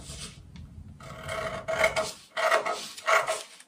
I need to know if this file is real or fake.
real